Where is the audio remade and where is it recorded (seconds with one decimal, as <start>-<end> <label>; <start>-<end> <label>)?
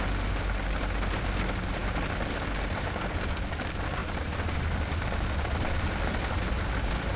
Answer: 0.0-7.2 recorded